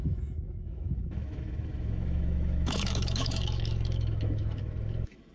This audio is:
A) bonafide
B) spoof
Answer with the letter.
B